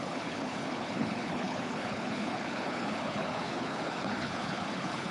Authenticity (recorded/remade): remade